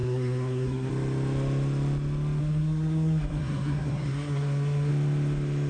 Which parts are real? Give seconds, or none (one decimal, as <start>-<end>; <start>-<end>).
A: 0.9-2.4; 4.9-5.7